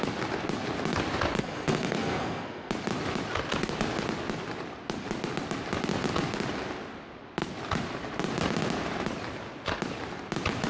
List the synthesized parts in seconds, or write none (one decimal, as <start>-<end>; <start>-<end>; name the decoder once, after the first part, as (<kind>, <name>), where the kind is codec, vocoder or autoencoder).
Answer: 1.4-2.7 (codec, SNAC)